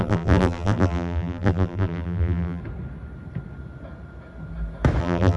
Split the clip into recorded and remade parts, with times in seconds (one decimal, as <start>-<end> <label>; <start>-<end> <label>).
0.0-2.6 remade; 2.6-5.0 recorded; 5.0-5.4 remade